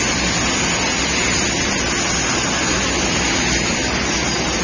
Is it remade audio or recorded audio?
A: recorded